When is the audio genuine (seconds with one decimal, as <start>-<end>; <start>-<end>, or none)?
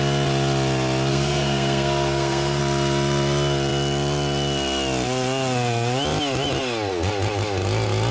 0.0-1.1; 2.6-8.1